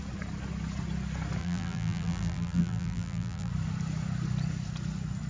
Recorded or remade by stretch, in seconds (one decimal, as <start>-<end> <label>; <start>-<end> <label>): 0.0-1.4 recorded; 1.4-3.5 remade; 3.5-5.3 recorded